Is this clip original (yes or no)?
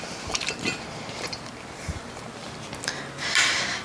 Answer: yes